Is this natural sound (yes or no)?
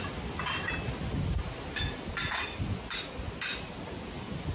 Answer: yes